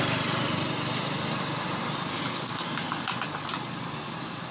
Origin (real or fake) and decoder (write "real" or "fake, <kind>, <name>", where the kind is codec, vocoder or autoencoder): real